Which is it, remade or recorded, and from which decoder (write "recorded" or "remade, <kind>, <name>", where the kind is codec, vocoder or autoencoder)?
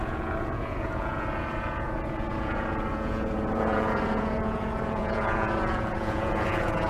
remade, vocoder, Vocos